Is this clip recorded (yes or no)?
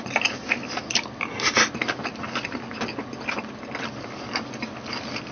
yes